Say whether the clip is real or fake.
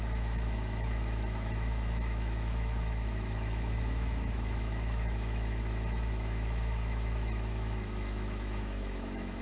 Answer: fake